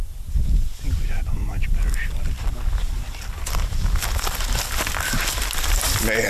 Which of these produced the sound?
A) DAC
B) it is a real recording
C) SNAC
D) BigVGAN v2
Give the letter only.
B